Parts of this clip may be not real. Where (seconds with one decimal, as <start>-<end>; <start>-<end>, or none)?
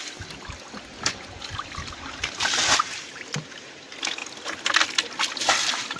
1.1-3.4